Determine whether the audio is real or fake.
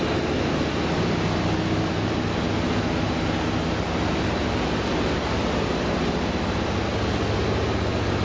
real